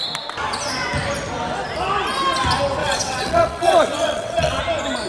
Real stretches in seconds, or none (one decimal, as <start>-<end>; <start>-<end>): 0.0-2.8; 4.6-5.1